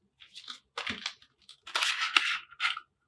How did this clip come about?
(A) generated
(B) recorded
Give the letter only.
B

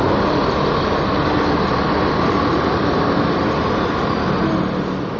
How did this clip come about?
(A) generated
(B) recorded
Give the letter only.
B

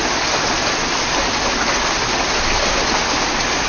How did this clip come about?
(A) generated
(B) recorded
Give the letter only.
B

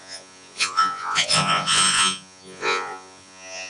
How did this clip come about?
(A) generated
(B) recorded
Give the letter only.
A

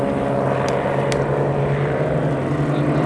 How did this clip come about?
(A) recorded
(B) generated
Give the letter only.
A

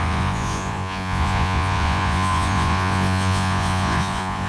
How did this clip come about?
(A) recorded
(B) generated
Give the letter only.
B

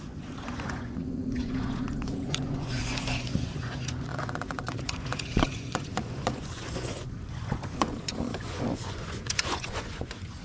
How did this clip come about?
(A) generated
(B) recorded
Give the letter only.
A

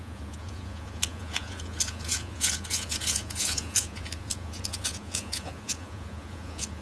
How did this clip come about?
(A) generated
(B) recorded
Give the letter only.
A